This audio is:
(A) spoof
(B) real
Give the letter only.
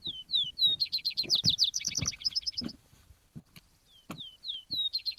A